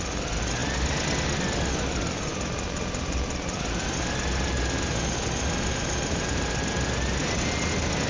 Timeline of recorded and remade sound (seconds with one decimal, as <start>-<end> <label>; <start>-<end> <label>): 0.0-8.1 recorded